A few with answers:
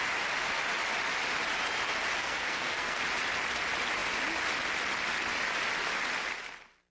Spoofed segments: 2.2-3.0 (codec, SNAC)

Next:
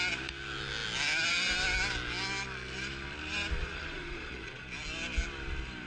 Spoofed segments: 3.6-4.6 (vocoder, Vocos)